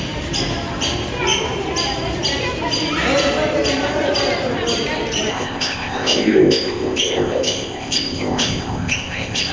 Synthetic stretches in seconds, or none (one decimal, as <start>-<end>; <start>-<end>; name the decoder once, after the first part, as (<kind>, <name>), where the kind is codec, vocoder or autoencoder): 5.3-9.5 (codec, ZipCodec)